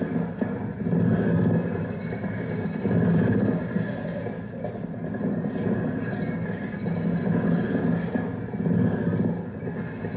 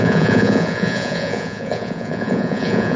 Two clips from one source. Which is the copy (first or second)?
second